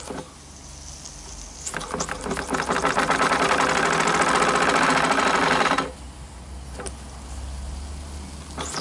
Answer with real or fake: real